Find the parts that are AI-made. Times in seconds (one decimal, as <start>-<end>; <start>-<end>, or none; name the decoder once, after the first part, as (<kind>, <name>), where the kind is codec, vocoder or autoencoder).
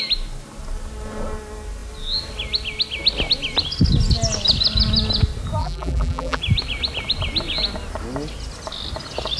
5.6-6.4 (vocoder, BigVGAN v2)